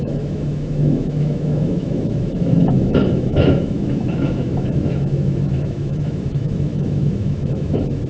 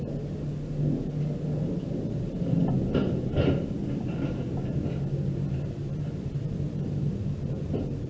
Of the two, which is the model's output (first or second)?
first